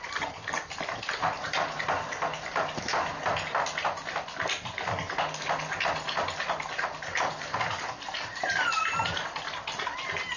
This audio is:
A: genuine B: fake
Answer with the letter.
A